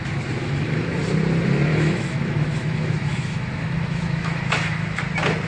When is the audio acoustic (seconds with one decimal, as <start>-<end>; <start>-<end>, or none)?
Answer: 0.0-0.4; 1.0-1.7; 5.0-5.5